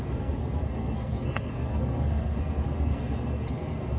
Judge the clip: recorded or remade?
remade